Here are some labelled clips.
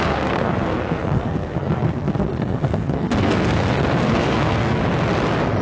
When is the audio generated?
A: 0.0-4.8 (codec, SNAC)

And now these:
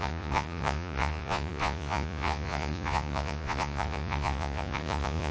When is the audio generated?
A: 0.0-5.3 (vocoder, Vocos)

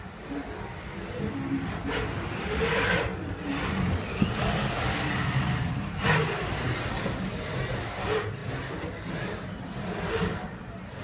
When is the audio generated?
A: none

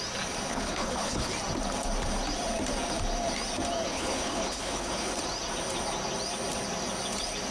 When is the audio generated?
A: 0.5-1.3 (codec, HILCodec); 3.9-5.1

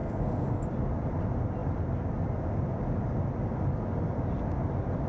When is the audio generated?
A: 0.0-0.6 (codec, SNAC)

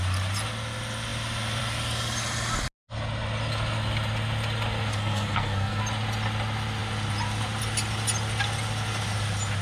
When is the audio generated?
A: 4.9-5.8 (codec, SNAC)

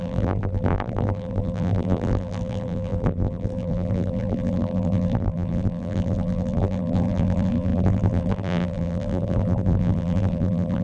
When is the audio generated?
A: 0.0-10.8 (vocoder, BigVGAN v2)

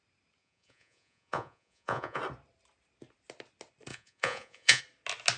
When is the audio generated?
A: 0.4-2.2 (vocoder, Vocos); 3.9-4.8